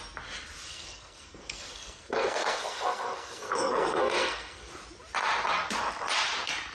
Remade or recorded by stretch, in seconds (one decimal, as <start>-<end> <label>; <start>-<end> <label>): 0.0-0.7 recorded; 0.7-4.7 remade; 4.7-6.7 recorded